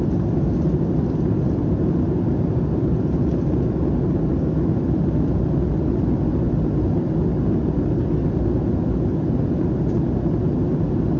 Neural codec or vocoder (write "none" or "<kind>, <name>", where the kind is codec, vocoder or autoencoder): none